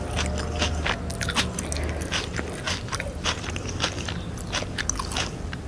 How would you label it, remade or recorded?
recorded